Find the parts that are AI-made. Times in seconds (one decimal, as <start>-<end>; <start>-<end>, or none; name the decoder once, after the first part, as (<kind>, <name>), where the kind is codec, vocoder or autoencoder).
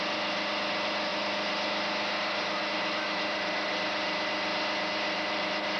none